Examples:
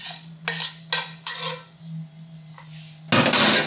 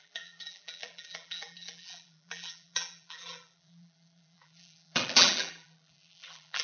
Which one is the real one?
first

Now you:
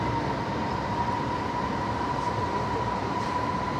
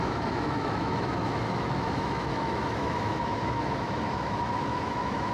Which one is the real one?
first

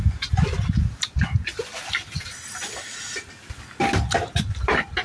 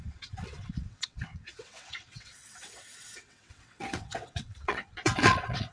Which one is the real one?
first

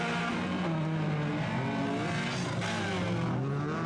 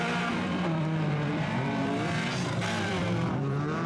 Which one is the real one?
first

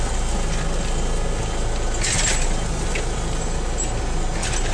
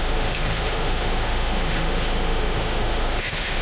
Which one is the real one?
first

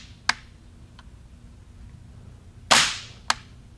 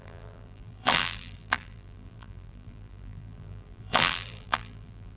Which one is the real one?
first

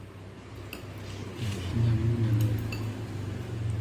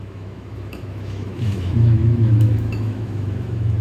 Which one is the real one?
first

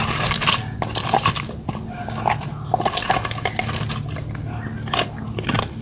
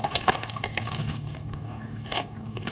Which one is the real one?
first